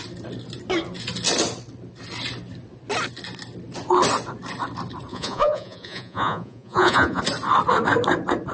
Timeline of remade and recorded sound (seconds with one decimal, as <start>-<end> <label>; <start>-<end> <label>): 0.0-5.1 recorded; 5.1-7.2 remade; 7.2-8.5 recorded